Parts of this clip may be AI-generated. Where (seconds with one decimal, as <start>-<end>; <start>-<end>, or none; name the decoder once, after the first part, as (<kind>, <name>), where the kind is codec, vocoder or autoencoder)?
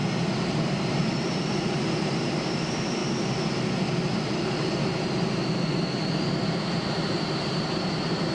none